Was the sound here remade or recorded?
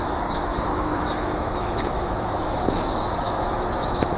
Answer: remade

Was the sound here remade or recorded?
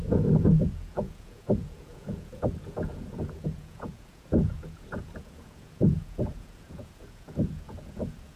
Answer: remade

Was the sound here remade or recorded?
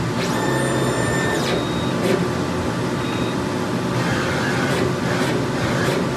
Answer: recorded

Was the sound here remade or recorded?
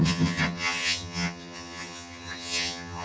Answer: remade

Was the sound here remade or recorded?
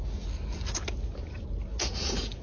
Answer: recorded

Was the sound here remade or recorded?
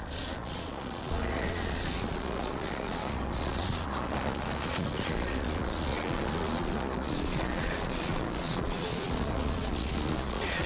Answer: remade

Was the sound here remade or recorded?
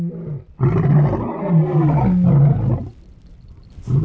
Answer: recorded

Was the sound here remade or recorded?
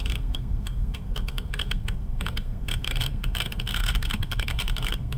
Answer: remade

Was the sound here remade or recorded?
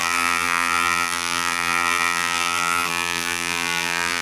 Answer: remade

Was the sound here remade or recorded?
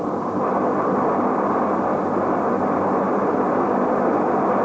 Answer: recorded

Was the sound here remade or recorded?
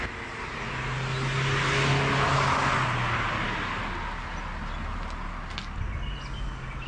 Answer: recorded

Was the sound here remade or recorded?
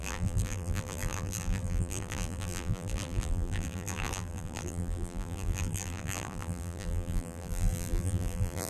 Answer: remade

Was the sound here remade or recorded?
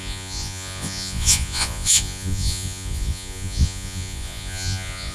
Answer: remade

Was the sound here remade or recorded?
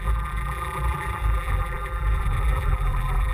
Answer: remade